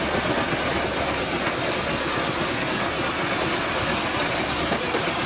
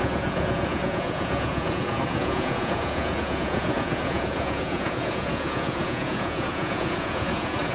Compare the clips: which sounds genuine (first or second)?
first